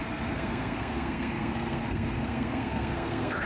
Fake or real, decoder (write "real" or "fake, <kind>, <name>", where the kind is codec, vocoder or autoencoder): fake, codec, SNAC